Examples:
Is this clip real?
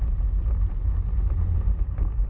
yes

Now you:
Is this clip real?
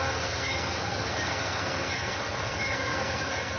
no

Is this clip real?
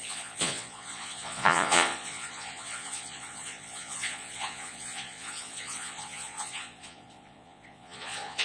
no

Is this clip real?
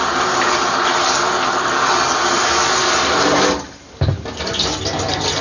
yes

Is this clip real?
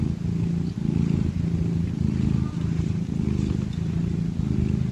yes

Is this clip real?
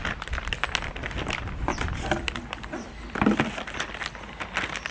yes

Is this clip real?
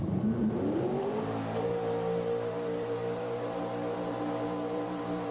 no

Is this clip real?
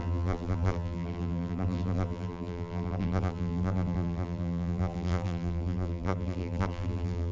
no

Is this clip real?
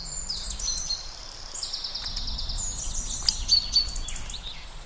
yes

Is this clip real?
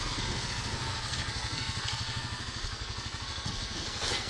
no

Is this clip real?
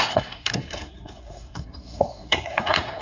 no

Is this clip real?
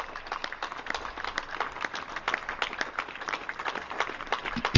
yes